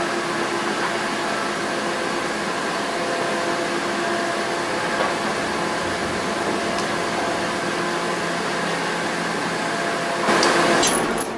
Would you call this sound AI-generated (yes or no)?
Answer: no